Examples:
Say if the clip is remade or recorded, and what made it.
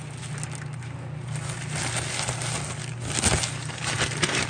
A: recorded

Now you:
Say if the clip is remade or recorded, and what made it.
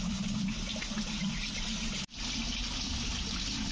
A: recorded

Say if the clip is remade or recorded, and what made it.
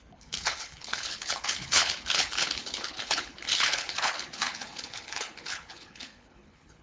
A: remade, codec, HILCodec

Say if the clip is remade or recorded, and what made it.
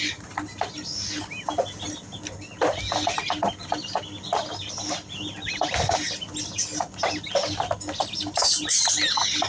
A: recorded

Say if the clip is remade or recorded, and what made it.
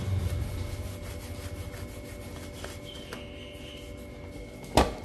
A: recorded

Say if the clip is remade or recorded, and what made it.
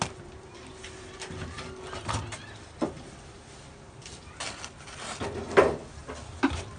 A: recorded